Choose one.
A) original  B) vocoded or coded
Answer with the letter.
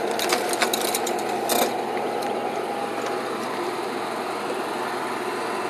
A